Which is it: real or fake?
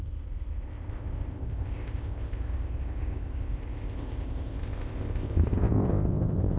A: fake